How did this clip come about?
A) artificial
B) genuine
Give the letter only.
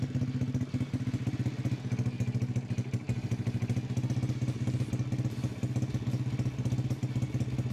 B